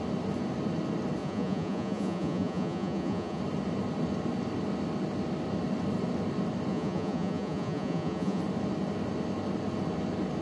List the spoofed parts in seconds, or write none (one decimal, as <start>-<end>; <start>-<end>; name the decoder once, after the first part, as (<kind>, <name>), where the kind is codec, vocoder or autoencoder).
1.2-3.4 (vocoder, Vocos); 6.7-8.4